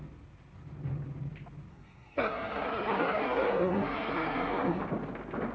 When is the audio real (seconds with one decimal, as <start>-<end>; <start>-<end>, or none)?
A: 0.0-1.7; 4.8-5.5